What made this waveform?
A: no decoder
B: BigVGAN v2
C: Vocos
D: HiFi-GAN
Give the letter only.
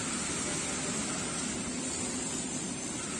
A